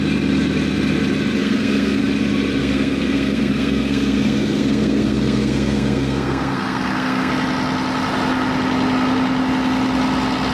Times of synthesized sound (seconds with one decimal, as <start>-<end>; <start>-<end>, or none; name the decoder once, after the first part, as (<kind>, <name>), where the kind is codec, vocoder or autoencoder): 1.4-2.0 (codec, SNAC); 2.6-7.3